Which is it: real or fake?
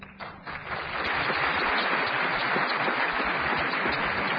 real